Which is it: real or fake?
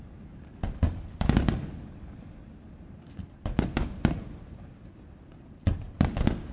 real